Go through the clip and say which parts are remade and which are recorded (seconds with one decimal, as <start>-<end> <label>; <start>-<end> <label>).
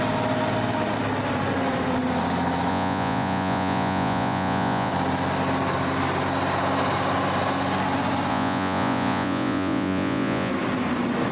0.0-2.7 recorded; 2.7-4.9 remade; 4.9-8.3 recorded; 8.3-10.5 remade; 10.5-11.3 recorded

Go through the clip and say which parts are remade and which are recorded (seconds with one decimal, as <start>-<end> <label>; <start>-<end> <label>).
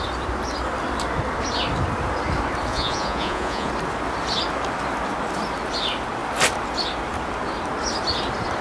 0.0-2.7 recorded; 2.7-3.7 remade; 3.7-8.6 recorded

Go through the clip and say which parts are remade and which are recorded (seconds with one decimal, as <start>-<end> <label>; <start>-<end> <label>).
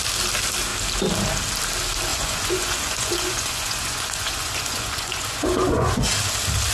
0.0-2.1 recorded; 2.1-6.0 remade; 6.0-6.7 recorded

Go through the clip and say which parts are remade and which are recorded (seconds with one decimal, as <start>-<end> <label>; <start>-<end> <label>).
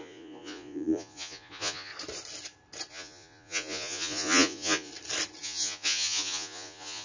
0.0-1.9 remade; 1.9-2.9 recorded; 2.9-4.9 remade; 4.9-5.4 recorded; 5.4-7.0 remade